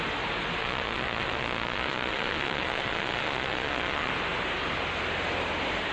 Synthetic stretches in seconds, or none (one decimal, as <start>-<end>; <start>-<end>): 0.6-4.1